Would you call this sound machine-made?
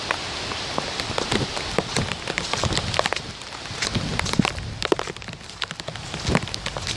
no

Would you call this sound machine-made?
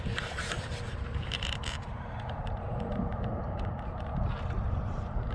yes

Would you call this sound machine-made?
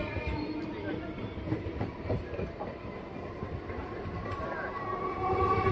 yes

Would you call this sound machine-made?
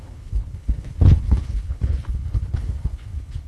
yes